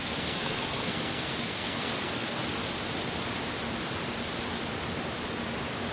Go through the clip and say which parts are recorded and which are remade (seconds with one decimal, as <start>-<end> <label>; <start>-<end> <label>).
0.0-2.4 remade; 2.4-5.9 recorded